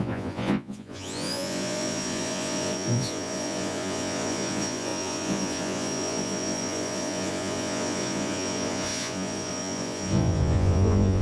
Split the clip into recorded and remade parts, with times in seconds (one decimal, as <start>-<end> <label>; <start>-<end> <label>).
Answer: 0.0-11.2 remade